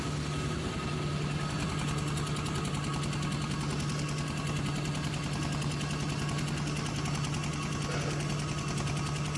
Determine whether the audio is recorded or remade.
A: recorded